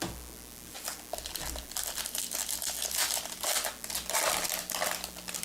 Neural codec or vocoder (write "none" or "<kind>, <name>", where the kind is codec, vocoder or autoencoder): none